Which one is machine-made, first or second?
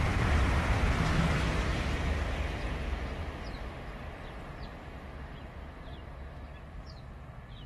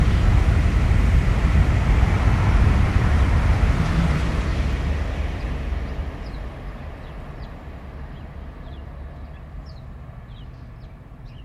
first